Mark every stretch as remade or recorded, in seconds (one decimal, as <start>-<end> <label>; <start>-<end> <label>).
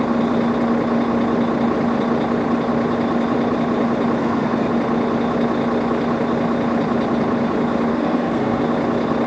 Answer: 0.0-4.2 recorded; 4.2-4.7 remade; 4.7-7.9 recorded; 7.9-8.6 remade; 8.6-9.3 recorded